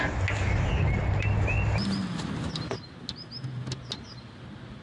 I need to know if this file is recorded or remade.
recorded